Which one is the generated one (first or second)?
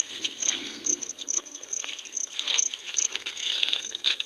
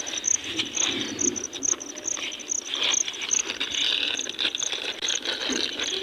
first